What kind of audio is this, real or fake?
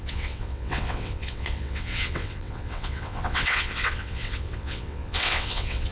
fake